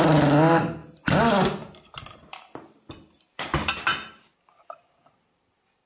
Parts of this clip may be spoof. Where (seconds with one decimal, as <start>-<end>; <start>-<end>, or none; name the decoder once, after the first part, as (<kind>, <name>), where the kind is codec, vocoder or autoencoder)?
none